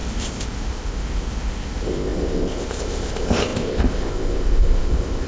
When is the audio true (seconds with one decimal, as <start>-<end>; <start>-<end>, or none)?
none